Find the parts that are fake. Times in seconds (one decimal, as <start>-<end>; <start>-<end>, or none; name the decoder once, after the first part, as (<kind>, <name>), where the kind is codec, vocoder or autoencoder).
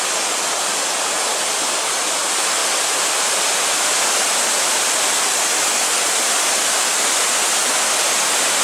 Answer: none